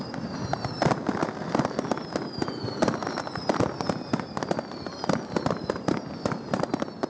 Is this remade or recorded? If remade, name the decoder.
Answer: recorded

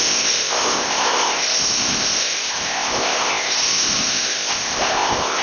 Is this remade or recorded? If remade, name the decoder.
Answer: remade, codec, ZipCodec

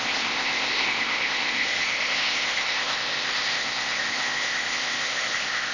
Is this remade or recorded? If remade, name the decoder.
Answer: remade, codec, ZipCodec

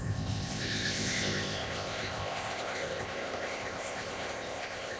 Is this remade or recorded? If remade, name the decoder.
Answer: remade, codec, ZipCodec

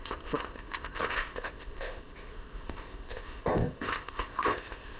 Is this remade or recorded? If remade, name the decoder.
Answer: remade, codec, ZipCodec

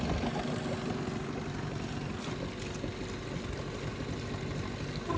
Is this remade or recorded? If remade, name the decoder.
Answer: recorded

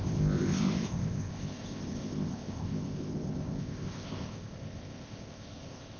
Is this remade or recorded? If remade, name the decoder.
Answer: remade, codec, ZipCodec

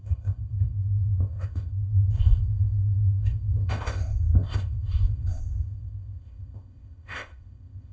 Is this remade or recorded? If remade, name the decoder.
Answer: remade, codec, ZipCodec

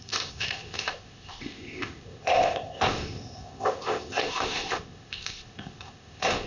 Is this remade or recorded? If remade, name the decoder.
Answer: remade, codec, ZipCodec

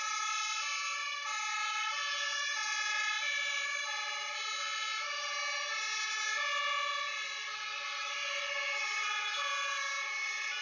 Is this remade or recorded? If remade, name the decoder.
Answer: recorded